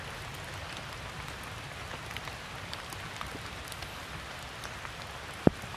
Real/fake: real